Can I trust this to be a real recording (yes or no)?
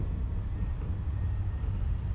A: yes